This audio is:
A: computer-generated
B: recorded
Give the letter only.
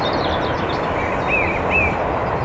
B